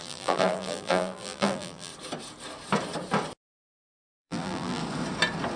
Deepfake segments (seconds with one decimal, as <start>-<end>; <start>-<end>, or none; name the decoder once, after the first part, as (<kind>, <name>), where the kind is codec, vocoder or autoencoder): 0.0-1.9 (vocoder, BigVGAN v2); 4.2-4.8